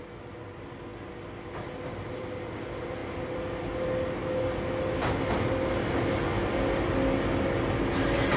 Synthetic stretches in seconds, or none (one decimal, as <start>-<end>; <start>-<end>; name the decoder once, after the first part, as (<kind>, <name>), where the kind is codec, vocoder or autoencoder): none